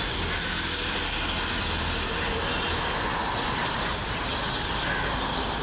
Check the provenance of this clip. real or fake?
real